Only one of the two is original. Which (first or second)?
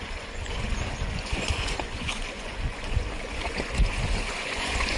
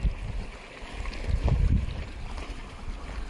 second